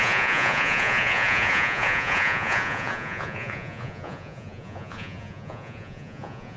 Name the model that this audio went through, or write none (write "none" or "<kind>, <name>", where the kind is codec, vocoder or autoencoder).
vocoder, Vocos